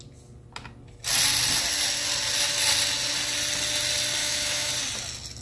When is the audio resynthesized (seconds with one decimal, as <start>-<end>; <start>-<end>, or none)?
4.2-4.7